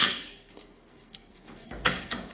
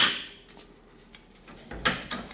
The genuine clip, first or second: second